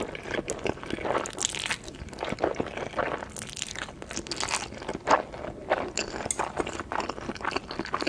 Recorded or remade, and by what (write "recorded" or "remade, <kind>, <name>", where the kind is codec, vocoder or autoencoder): recorded